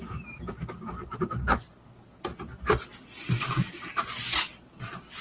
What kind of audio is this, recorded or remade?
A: recorded